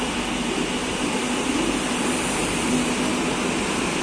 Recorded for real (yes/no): yes